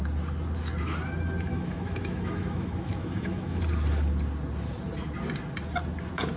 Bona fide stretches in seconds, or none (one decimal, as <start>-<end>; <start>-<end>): 0.0-1.5; 3.6-6.4